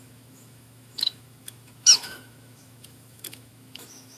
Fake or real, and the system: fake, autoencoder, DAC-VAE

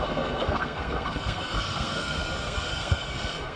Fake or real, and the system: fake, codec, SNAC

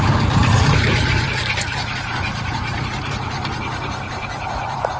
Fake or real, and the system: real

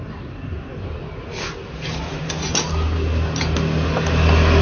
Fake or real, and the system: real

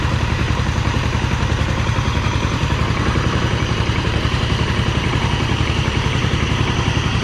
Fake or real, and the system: fake, vocoder, BigVGAN v2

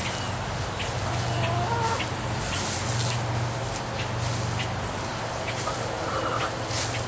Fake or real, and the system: real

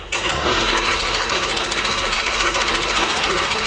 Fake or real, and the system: fake, codec, SNAC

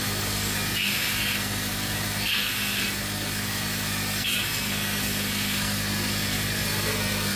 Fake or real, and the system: fake, codec, SNAC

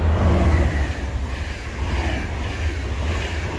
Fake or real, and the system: real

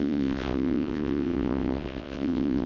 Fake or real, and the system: fake, vocoder, WaveNeXt